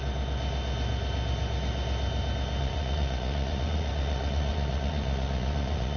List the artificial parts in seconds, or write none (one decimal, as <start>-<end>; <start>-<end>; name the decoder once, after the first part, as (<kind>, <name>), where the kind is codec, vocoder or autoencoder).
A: 2.6-6.0 (vocoder, Vocos)